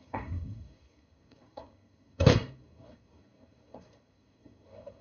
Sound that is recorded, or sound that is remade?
remade